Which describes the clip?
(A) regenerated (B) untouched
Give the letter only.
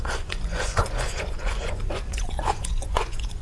A